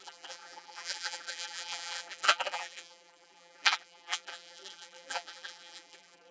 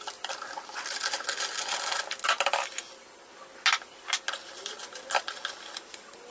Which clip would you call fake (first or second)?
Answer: first